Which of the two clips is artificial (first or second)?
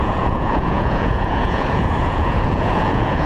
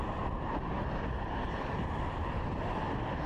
first